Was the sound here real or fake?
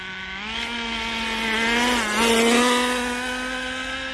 real